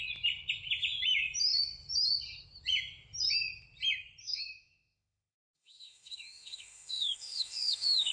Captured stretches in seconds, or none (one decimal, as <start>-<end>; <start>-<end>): 0.0-4.2